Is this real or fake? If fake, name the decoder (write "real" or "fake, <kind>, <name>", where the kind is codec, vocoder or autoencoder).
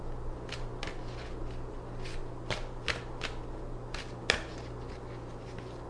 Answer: real